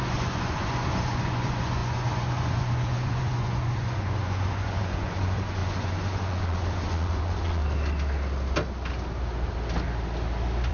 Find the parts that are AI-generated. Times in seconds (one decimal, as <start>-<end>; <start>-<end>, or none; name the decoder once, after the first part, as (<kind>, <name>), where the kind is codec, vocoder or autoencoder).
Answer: 0.0-7.6 (vocoder, Vocos)